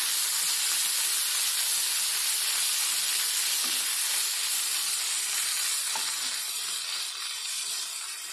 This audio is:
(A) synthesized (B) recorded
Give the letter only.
B